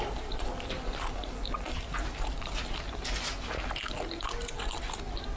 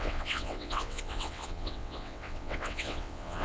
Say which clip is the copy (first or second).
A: second